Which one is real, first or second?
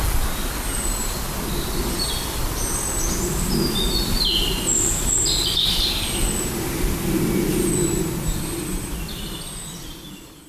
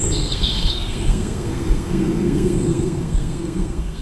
first